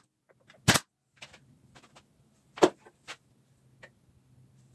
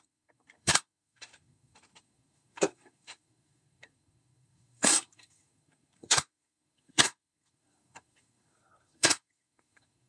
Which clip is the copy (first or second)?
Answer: second